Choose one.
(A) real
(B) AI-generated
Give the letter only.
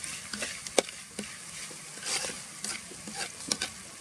A